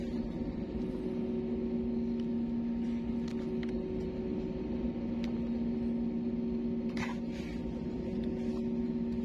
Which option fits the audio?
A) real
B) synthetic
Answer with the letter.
A